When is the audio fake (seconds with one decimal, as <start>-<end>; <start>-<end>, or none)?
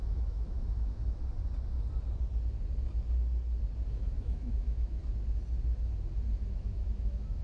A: 0.0-1.2; 3.9-5.0; 6.5-7.4